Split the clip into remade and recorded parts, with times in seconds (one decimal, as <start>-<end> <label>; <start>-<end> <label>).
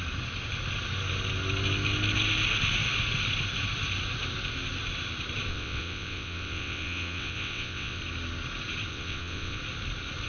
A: 0.0-5.5 recorded; 5.5-8.0 remade; 8.0-8.9 recorded; 8.9-9.6 remade; 9.6-10.3 recorded